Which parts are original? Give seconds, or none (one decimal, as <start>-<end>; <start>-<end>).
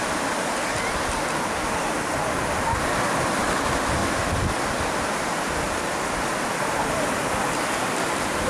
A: 0.0-8.5